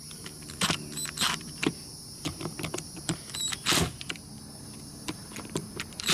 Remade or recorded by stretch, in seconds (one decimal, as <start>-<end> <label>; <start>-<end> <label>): 0.0-6.1 remade